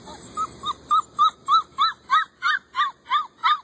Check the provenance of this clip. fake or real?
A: real